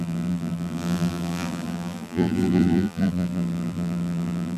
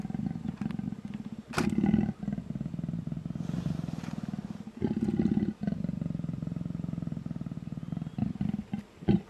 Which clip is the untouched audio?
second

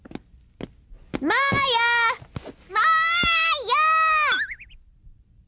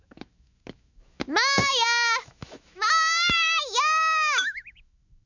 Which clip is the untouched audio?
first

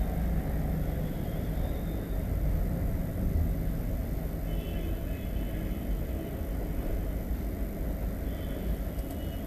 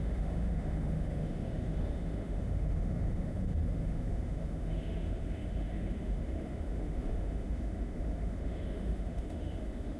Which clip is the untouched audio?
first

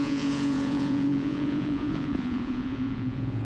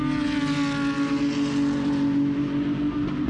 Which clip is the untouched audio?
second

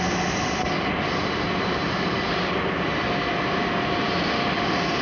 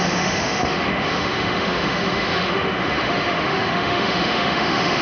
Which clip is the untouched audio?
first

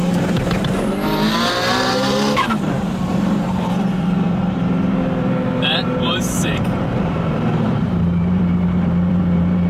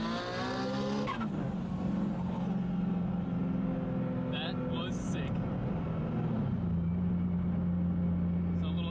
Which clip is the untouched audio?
second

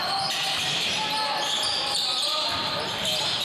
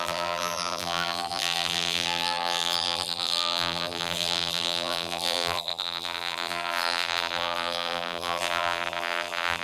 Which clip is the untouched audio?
first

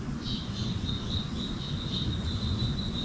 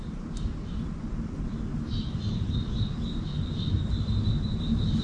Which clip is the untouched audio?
second